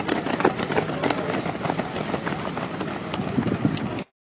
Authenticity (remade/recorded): recorded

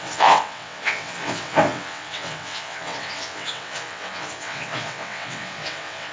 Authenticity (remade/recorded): remade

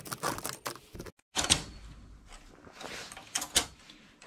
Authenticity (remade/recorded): recorded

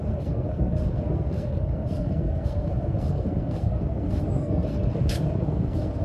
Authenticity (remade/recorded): remade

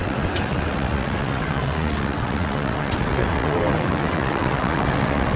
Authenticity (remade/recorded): remade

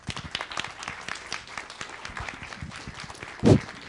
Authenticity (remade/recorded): recorded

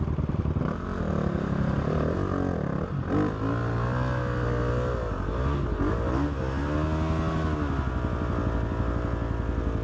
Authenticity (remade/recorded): recorded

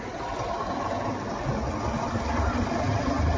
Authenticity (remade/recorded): recorded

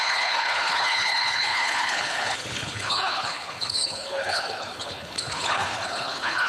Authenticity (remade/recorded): remade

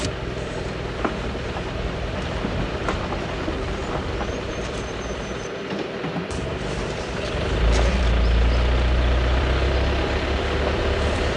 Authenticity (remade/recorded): remade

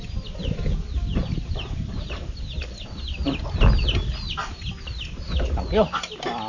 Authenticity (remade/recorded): recorded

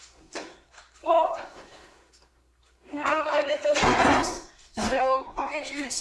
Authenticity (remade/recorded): remade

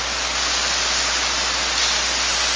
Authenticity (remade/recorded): recorded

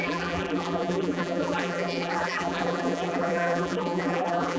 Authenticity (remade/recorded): remade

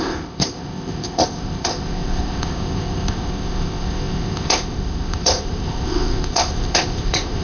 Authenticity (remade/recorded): remade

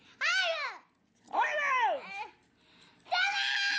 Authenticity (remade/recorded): recorded